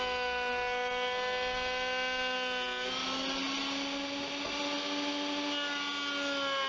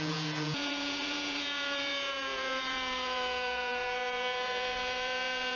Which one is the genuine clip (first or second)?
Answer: first